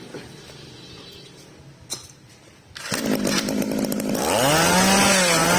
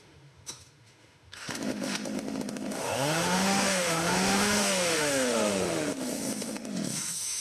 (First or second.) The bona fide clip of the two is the first